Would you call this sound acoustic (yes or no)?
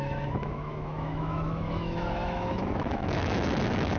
no